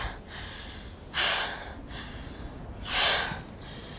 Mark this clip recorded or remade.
recorded